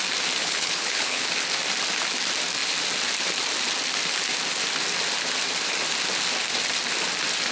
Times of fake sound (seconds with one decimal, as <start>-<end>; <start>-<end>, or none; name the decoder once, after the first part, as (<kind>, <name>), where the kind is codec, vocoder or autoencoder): 0.4-1.2 (codec, HILCodec)